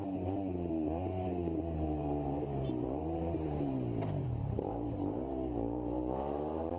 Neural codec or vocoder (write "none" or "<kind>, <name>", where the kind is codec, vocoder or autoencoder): vocoder, BigVGAN v2